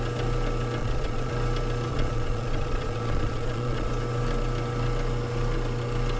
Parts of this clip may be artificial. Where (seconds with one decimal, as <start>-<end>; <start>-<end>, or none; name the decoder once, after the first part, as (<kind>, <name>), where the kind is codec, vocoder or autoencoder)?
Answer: 0.8-1.3 (vocoder, Vocos); 1.9-3.9